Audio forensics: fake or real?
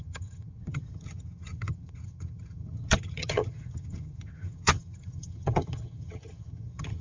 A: fake